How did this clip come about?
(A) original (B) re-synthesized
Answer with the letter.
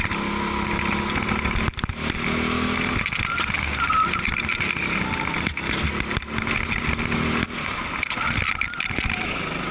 A